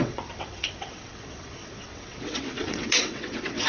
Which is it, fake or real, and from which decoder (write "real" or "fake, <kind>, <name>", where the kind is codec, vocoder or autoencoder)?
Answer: fake, vocoder, WaveNeXt